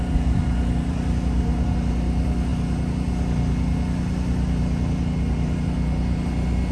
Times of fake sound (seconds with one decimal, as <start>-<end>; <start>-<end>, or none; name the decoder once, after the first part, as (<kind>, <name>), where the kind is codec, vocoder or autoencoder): none